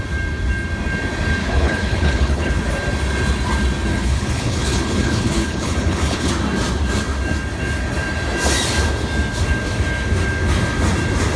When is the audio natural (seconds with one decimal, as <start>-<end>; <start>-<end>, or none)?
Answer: 0.0-1.4; 2.5-3.9; 6.3-11.4